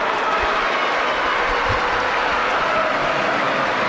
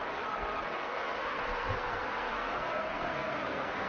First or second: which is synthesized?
second